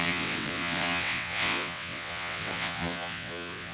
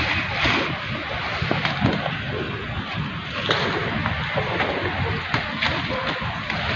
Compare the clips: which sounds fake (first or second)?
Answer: first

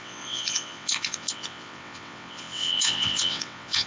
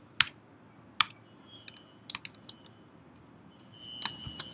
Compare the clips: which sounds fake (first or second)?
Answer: first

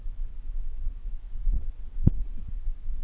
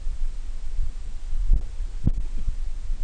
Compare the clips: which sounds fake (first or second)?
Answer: first